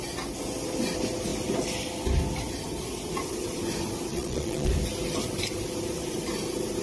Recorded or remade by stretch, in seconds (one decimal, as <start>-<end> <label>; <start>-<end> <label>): 0.0-4.1 recorded; 4.1-4.7 remade; 4.7-6.8 recorded